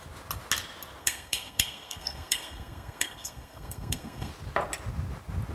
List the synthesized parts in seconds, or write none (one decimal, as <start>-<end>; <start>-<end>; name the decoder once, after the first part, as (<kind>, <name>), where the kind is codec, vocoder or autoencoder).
1.0-4.3 (codec, SNAC)